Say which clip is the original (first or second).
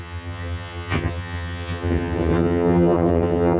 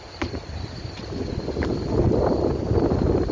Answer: second